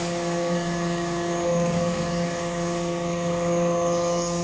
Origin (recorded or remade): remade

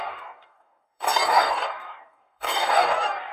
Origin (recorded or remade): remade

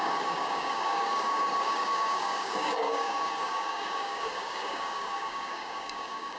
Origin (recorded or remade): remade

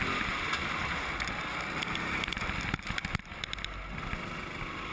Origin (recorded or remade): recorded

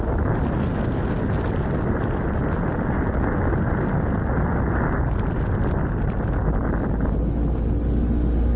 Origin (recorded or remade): recorded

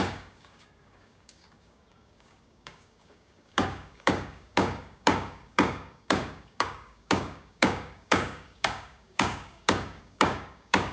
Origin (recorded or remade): remade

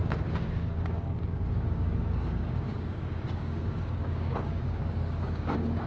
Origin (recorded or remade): remade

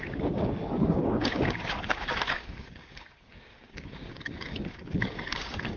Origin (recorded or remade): remade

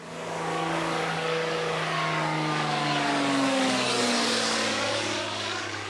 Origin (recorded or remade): remade